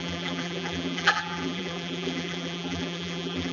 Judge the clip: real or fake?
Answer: fake